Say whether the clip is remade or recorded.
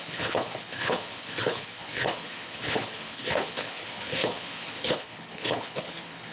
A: remade